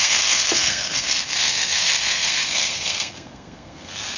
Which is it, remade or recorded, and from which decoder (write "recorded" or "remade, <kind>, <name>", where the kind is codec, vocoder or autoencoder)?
remade, codec, SNAC